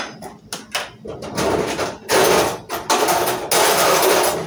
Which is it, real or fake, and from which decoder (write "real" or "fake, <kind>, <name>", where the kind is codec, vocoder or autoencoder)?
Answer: real